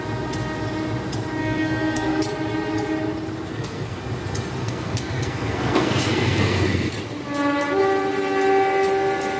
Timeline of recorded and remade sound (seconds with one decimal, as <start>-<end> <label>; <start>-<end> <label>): 0.0-1.4 recorded; 1.4-2.2 remade; 2.2-3.5 recorded; 3.5-4.0 remade; 4.0-4.6 recorded; 4.6-6.9 remade; 6.9-9.4 recorded